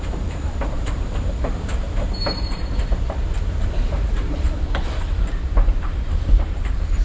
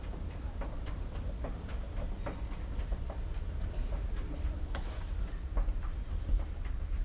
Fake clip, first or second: first